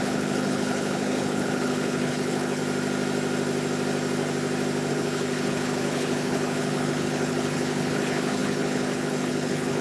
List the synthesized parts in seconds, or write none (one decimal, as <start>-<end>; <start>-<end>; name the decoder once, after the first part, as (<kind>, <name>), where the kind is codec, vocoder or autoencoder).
0.0-2.6 (codec, HILCodec); 4.9-9.8

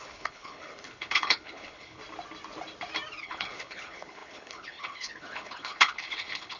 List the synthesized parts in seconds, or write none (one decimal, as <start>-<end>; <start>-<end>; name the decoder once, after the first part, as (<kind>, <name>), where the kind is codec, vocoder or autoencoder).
0.0-2.0 (codec, HILCodec); 3.2-6.6